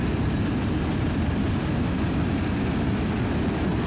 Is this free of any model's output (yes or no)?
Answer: yes